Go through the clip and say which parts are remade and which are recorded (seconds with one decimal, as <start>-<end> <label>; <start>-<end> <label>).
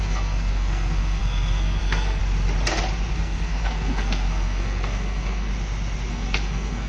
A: 0.0-2.2 remade; 2.2-3.1 recorded; 3.1-5.5 remade; 5.5-6.1 recorded; 6.1-6.9 remade